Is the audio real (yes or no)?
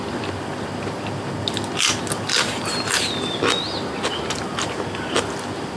yes